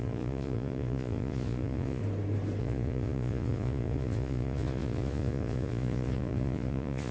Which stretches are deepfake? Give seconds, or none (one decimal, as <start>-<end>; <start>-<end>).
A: 0.0-2.0; 2.6-7.1

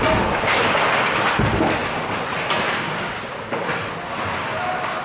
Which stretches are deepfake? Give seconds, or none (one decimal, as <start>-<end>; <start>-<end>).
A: none